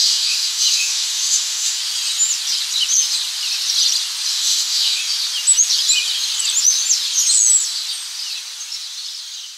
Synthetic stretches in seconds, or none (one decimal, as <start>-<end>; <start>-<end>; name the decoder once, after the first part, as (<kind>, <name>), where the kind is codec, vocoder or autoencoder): 0.0-1.8 (autoencoder, DAC-VAE); 4.3-5.0